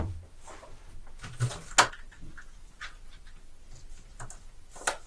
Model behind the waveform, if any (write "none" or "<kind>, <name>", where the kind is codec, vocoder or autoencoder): none